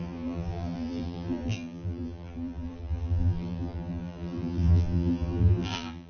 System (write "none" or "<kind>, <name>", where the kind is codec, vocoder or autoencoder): vocoder, BigVGAN v2